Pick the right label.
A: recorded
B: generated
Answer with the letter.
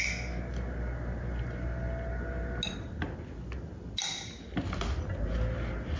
A